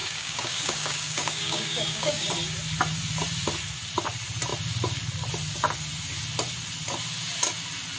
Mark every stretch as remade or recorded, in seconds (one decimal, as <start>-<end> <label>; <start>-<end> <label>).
0.0-2.3 remade; 2.3-8.0 recorded